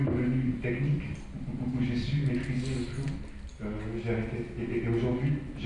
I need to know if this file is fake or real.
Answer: real